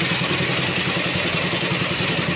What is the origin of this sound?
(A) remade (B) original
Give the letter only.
B